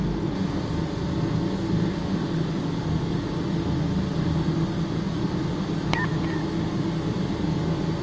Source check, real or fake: real